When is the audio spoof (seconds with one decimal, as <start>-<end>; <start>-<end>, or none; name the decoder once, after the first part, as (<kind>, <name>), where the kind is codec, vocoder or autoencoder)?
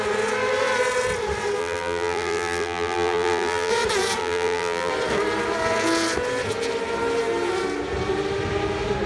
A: 1.6-3.7 (vocoder, BigVGAN v2); 4.2-4.9